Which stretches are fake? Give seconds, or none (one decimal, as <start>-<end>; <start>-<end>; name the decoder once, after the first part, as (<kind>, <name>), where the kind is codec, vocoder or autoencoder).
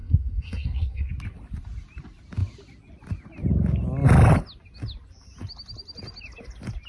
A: 0.0-1.1 (codec, SNAC)